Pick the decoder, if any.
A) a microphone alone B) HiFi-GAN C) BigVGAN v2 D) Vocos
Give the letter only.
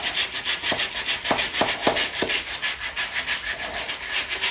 A